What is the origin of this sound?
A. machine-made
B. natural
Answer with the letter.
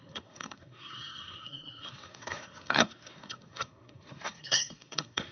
A